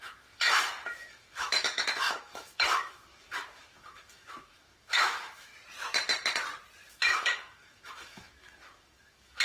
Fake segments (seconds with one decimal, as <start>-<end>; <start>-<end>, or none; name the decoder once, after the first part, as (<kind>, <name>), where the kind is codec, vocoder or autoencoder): 0.0-5.5 (autoencoder, DAC-VAE); 6.9-9.4